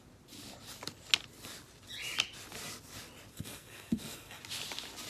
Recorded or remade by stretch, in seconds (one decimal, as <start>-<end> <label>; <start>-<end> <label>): 0.0-3.3 recorded; 3.3-4.4 remade; 4.4-5.1 recorded